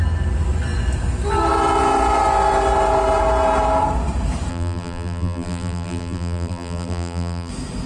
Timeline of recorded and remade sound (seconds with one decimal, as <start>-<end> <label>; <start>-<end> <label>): 0.0-4.5 recorded; 4.5-7.5 remade; 7.5-7.9 recorded